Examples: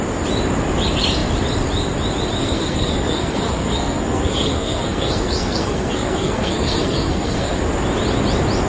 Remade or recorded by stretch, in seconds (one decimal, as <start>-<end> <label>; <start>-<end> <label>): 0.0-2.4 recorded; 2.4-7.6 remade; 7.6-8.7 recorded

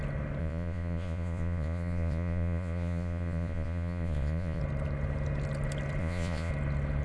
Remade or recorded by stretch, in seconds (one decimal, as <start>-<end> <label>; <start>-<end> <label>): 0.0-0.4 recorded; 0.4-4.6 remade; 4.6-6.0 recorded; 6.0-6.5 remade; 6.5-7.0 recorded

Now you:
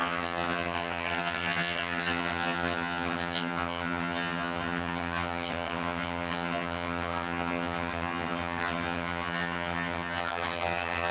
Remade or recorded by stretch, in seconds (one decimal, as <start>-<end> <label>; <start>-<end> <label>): 0.0-11.1 remade

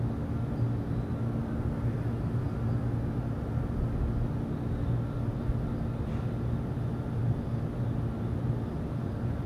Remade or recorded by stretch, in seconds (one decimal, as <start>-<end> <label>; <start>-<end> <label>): 0.0-9.5 recorded

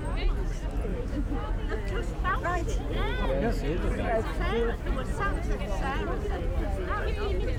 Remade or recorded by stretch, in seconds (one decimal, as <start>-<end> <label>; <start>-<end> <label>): 0.0-0.9 recorded; 0.9-1.5 remade; 1.5-7.6 recorded

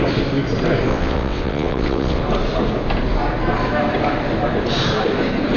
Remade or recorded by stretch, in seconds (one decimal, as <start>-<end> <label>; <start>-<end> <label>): 0.0-0.9 recorded; 0.9-2.2 remade; 2.2-5.6 recorded